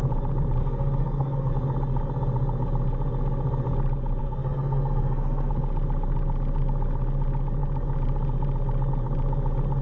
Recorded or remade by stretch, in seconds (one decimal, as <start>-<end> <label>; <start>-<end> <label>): 0.0-0.6 recorded; 0.6-1.5 remade; 1.5-4.2 recorded; 4.2-5.5 remade; 5.5-9.8 recorded

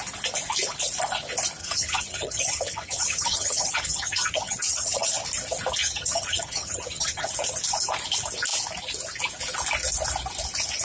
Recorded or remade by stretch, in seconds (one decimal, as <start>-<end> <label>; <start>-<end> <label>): 0.0-1.6 recorded; 1.6-5.1 remade; 5.1-5.8 recorded; 5.8-7.3 remade; 7.3-10.8 recorded